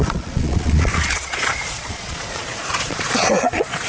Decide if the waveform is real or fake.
fake